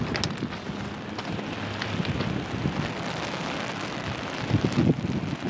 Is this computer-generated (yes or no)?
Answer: no